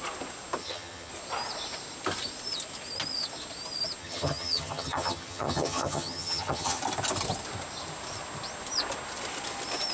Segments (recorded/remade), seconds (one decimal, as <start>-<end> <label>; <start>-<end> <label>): 0.0-0.6 recorded; 0.6-1.1 remade; 1.1-4.0 recorded; 4.0-6.8 remade; 6.8-9.9 recorded